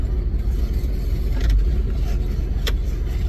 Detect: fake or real real